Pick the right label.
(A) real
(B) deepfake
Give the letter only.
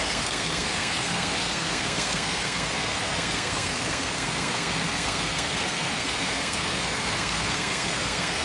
B